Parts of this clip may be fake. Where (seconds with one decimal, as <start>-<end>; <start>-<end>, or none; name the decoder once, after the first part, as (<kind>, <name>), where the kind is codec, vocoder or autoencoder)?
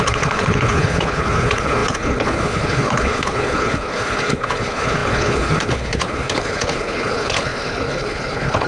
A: 0.0-8.7 (codec, HILCodec)